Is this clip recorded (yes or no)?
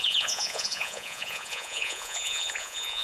no